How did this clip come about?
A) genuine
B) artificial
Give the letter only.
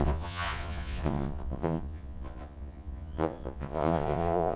B